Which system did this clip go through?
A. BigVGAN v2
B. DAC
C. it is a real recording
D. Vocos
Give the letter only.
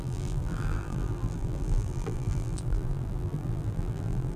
A